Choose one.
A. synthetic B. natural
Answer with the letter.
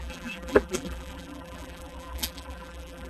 A